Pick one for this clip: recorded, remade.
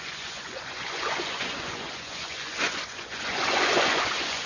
remade